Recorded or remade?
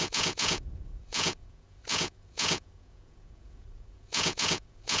remade